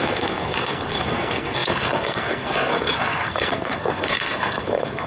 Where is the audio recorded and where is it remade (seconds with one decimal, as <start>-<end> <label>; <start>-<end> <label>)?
0.0-5.1 remade

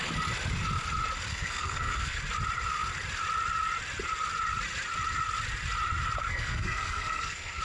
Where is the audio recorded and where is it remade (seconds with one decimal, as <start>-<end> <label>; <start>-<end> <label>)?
0.0-1.3 recorded; 1.3-2.2 remade; 2.2-6.2 recorded; 6.2-7.6 remade

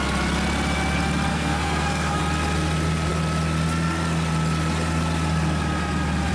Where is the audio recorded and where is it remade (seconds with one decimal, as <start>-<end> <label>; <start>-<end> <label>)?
0.0-1.3 recorded; 1.3-2.2 remade; 2.2-6.3 recorded

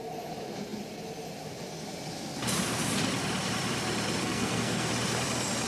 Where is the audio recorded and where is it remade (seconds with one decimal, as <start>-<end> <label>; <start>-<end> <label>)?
0.0-4.2 recorded; 4.2-4.9 remade; 4.9-5.7 recorded